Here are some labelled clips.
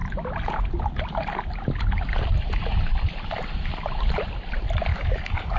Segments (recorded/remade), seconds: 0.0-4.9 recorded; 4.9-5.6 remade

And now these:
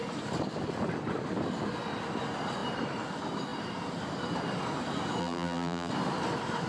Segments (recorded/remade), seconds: 0.0-5.2 recorded; 5.2-5.9 remade; 5.9-6.7 recorded

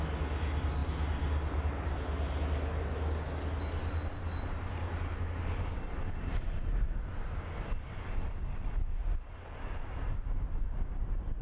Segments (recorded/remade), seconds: 0.0-11.4 recorded

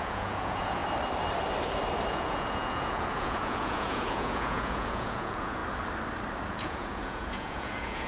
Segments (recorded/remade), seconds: 0.0-0.8 remade; 0.8-2.1 recorded; 2.1-5.6 remade; 5.6-6.5 recorded; 6.5-8.1 remade

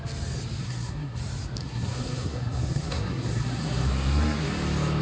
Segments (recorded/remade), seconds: 0.0-0.6 recorded; 0.6-1.2 remade; 1.2-1.6 recorded; 1.6-4.5 remade; 4.5-5.0 recorded

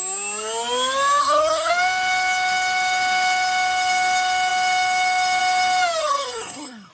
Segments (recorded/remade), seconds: 0.0-1.2 recorded; 1.2-1.7 remade; 1.7-6.0 recorded; 6.0-6.9 remade

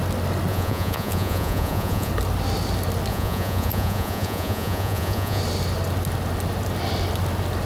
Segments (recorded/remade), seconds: 0.0-0.5 recorded; 0.5-2.1 remade; 2.1-3.1 recorded; 3.1-5.4 remade; 5.4-7.7 recorded